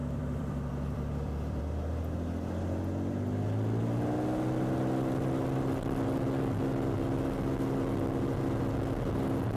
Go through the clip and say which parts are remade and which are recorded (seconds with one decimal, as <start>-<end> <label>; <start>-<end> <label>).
0.0-1.6 remade; 1.6-9.6 recorded